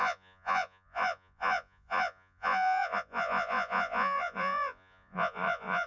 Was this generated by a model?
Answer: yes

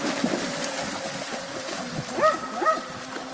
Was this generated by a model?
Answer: no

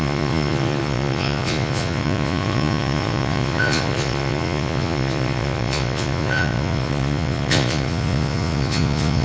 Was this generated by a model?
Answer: yes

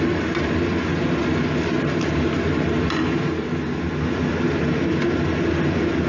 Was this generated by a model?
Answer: no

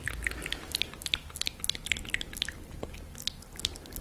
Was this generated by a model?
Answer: no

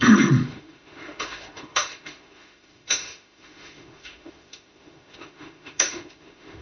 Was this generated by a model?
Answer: yes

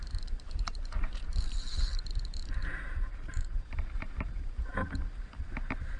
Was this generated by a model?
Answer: yes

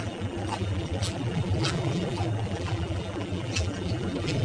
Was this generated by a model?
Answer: yes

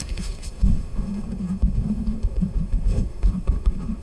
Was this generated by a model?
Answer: yes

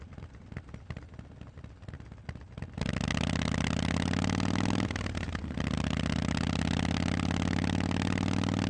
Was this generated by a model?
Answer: no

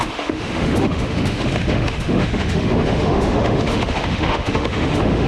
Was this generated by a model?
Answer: yes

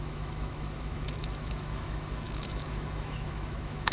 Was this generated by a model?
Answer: yes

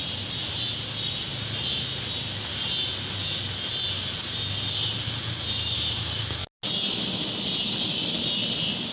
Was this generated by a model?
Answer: no